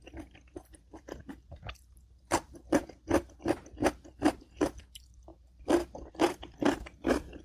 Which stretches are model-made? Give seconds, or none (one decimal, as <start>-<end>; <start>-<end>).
0.0-2.8; 4.8-7.4